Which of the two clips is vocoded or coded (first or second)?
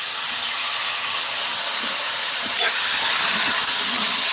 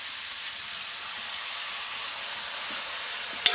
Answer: first